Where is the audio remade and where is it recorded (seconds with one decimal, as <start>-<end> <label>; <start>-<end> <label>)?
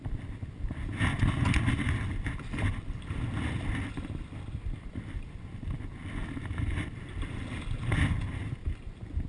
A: 0.0-9.3 recorded